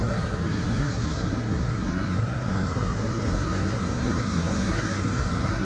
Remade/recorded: remade